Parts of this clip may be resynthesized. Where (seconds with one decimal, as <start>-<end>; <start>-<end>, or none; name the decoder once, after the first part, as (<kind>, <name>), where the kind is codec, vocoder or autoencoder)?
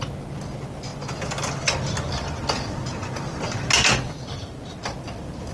none